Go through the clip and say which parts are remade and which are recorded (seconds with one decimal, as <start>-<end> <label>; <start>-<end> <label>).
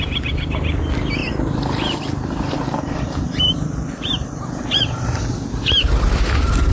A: 0.0-1.2 recorded; 1.2-5.2 remade; 5.2-6.7 recorded